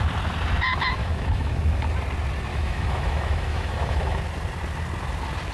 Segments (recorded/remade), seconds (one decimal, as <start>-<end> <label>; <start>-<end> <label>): 0.0-1.0 recorded; 1.0-1.8 remade; 1.8-2.5 recorded; 2.5-4.2 remade; 4.2-5.5 recorded